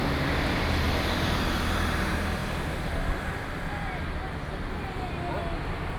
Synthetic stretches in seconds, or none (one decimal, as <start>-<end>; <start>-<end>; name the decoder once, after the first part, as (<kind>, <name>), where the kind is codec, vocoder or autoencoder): none